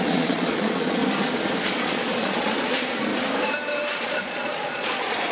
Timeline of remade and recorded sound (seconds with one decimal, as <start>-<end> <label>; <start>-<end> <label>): 0.0-1.0 remade; 1.0-1.6 recorded; 1.6-3.1 remade; 3.1-4.0 recorded; 4.0-5.3 remade